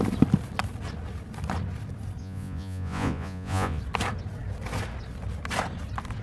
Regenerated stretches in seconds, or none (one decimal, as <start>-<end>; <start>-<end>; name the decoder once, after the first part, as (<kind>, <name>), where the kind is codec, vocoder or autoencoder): 2.2-3.8 (vocoder, Vocos)